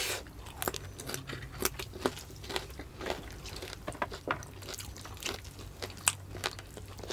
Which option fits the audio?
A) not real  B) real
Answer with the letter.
B